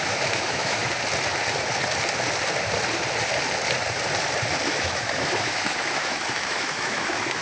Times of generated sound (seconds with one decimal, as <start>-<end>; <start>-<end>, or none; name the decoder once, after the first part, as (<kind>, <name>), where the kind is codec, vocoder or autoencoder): 0.0-0.8 (autoencoder, DAC-VAE); 4.7-7.4